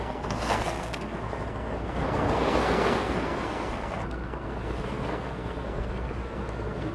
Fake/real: fake